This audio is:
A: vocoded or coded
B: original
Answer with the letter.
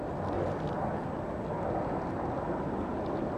B